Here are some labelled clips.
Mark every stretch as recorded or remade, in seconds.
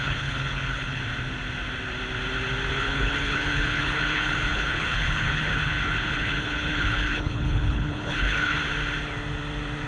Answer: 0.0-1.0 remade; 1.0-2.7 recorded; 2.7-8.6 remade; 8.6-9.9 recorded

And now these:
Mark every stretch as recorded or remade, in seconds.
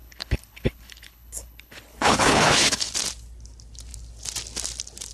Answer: 0.0-2.9 remade; 2.9-5.1 recorded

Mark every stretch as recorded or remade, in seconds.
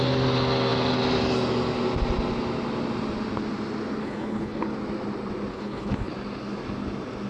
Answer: 0.0-4.0 recorded; 4.0-4.7 remade; 4.7-5.5 recorded; 5.5-6.1 remade; 6.1-7.3 recorded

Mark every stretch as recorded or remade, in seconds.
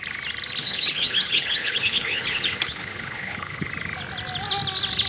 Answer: 0.0-0.6 recorded; 0.6-3.7 remade; 3.7-5.1 recorded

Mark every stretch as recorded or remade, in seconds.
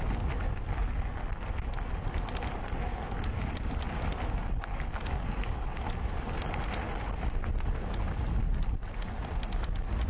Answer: 0.0-10.1 recorded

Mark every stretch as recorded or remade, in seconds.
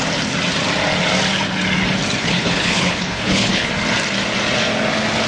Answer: 0.0-2.2 recorded; 2.2-3.7 remade; 3.7-5.3 recorded